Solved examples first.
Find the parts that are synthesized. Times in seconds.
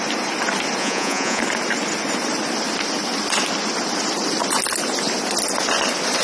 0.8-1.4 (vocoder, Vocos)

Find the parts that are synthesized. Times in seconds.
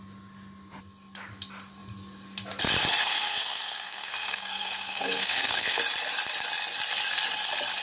3.0-5.8 (codec, SNAC)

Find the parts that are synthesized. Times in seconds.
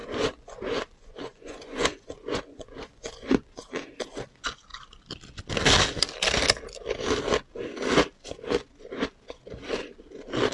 0.0-0.6 (vocoder, Vocos); 1.0-3.9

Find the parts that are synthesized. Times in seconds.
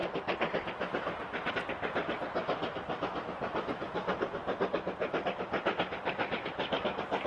2.6-5.2 (vocoder, BigVGAN v2)